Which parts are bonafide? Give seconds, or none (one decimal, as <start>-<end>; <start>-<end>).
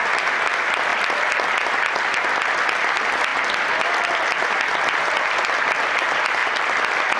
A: 0.0-0.9; 1.5-6.4